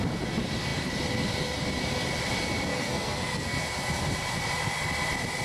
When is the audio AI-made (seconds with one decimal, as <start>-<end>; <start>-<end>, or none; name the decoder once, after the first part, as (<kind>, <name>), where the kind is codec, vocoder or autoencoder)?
2.7-3.6 (codec, SNAC)